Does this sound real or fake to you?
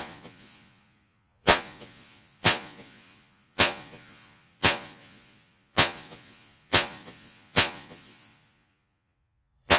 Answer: fake